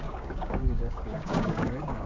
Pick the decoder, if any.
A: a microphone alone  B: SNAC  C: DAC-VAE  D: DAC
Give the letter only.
D